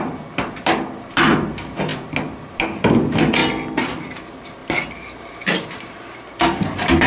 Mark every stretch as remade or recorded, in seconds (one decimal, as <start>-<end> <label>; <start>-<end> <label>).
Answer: 0.0-4.6 recorded; 4.6-5.3 remade; 5.3-7.1 recorded